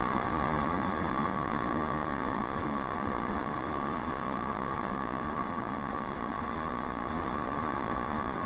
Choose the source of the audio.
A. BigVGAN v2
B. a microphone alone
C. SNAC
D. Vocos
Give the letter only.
D